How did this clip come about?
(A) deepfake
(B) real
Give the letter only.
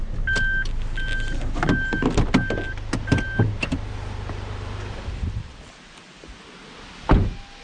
B